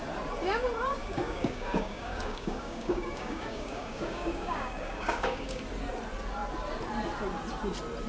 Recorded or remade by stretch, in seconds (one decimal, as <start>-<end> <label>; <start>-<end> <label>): 0.0-1.0 recorded; 1.0-5.6 remade; 5.6-8.1 recorded